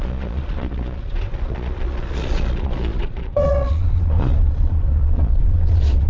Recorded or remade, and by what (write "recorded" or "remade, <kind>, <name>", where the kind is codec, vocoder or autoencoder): remade, vocoder, Vocos